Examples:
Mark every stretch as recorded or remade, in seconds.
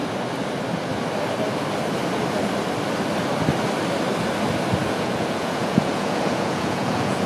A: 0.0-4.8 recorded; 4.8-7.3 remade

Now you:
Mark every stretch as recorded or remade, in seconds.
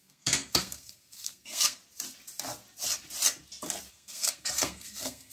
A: 0.0-1.8 remade; 1.8-3.9 recorded; 3.9-5.3 remade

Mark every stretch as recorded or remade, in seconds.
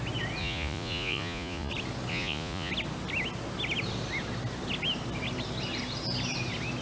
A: 0.0-0.4 recorded; 0.4-1.7 remade; 1.7-2.1 recorded; 2.1-2.7 remade; 2.7-6.8 recorded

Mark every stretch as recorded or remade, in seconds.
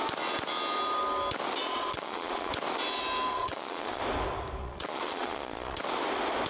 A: 0.0-1.6 recorded; 1.6-2.5 remade; 2.5-3.3 recorded; 3.3-4.0 remade; 4.0-4.6 recorded; 4.6-5.8 remade; 5.8-6.5 recorded